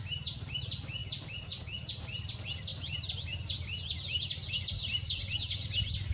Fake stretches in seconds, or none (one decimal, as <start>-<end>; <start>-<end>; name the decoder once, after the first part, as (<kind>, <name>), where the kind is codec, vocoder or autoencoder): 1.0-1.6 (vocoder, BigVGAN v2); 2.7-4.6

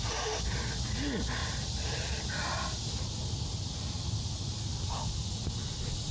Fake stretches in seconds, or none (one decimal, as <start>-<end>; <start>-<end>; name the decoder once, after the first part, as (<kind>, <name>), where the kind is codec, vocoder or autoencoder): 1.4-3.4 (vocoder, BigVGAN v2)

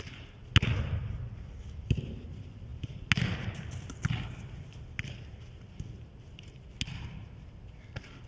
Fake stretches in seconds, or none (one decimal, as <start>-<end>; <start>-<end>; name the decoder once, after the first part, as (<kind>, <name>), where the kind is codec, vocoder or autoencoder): none